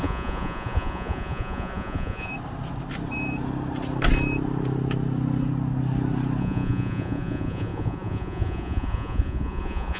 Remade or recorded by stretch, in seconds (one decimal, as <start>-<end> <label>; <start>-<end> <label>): 0.0-2.3 remade; 2.3-6.4 recorded; 6.4-10.0 remade